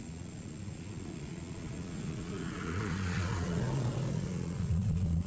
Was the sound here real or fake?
fake